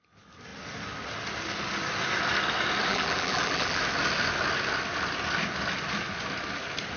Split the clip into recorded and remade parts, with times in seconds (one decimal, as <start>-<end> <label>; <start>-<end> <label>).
0.0-2.9 recorded; 2.9-3.8 remade; 3.8-7.0 recorded